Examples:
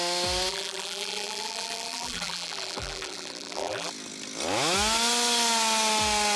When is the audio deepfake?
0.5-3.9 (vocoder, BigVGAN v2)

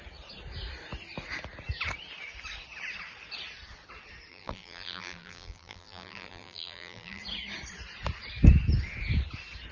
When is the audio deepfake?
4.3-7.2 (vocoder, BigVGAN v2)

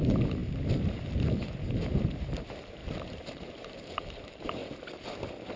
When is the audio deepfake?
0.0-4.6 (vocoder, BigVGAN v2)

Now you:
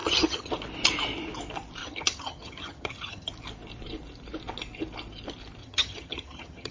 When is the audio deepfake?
0.0-0.5 (vocoder, HiFi-GAN); 1.8-3.3; 5.6-6.7

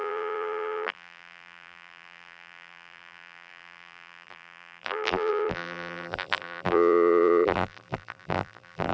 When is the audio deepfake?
0.0-8.9 (vocoder, BigVGAN v2)

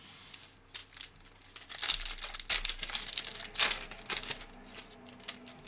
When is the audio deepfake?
none